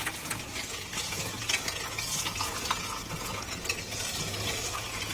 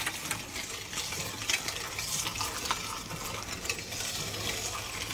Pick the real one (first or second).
second